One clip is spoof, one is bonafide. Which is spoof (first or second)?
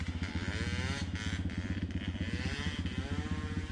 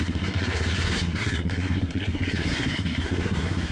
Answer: second